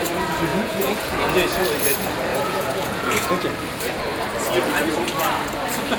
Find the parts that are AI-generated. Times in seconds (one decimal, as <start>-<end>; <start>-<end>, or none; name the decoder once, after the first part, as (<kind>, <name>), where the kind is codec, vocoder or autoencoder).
0.5-1.3 (vocoder, Vocos); 2.3-3.3